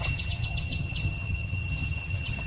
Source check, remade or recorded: remade